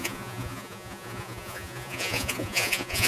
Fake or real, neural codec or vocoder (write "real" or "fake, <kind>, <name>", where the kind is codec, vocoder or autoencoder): fake, vocoder, Vocos